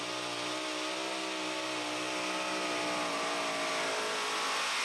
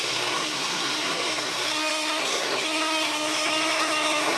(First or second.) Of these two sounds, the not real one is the second